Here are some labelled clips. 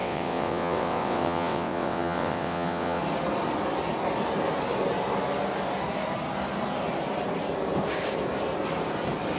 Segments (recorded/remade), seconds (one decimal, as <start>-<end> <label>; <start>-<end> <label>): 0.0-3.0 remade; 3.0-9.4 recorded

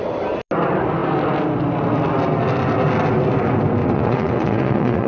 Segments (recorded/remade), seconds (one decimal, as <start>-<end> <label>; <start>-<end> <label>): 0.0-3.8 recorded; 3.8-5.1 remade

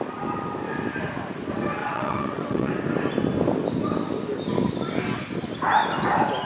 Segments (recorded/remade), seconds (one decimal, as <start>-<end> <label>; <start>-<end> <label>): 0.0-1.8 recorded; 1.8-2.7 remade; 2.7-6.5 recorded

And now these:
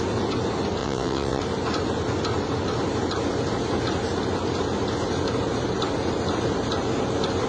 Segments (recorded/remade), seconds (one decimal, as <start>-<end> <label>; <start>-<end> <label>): 0.0-0.8 recorded; 0.8-1.4 remade; 1.4-7.5 recorded

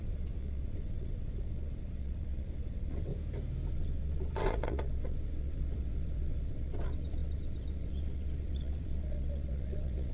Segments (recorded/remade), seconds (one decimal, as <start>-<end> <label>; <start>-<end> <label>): 0.0-3.1 remade; 3.1-3.7 recorded; 3.7-10.1 remade

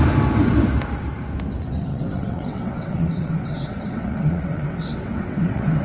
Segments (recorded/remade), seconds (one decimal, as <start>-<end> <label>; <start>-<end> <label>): 0.0-1.9 recorded; 1.9-5.8 remade